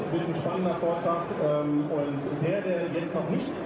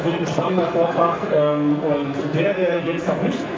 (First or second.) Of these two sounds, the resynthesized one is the second